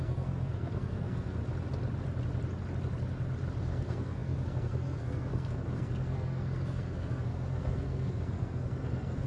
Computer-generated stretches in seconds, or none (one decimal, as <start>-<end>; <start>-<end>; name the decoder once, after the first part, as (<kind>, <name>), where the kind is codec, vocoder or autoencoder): 0.0-1.4 (codec, SNAC); 3.6-9.3